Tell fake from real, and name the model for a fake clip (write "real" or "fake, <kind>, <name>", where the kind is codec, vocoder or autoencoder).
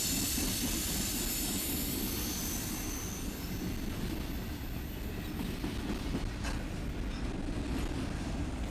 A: real